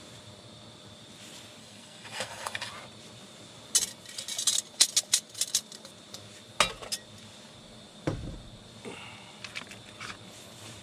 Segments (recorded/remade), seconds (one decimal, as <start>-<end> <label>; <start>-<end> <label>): 0.0-1.6 recorded; 1.6-2.7 remade; 2.7-10.8 recorded